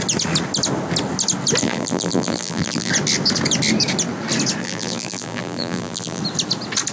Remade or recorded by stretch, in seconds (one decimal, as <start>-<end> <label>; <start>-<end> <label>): 0.0-1.6 recorded; 1.6-2.9 remade; 2.9-4.6 recorded; 4.6-6.2 remade; 6.2-6.9 recorded